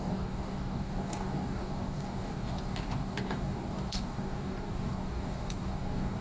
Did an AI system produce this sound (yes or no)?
yes